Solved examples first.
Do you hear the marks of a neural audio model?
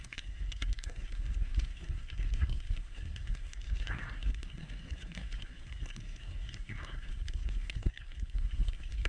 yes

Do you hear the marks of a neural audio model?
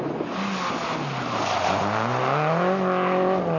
no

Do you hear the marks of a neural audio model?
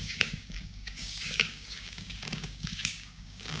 yes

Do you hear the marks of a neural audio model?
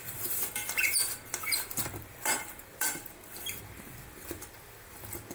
yes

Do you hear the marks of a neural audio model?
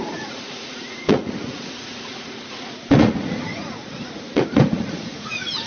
yes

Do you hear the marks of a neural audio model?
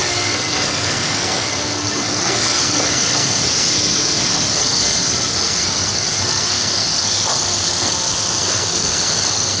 yes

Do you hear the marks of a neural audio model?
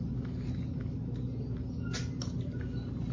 no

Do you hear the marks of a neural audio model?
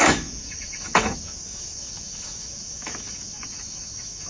yes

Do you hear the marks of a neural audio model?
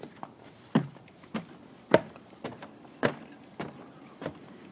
yes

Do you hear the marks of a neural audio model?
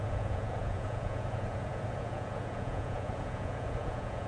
yes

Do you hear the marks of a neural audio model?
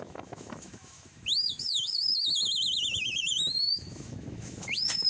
yes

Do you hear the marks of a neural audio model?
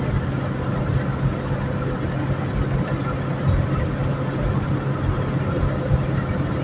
no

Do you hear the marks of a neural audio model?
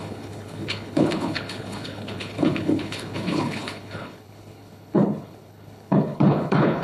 yes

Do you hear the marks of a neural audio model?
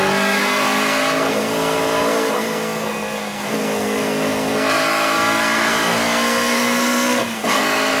yes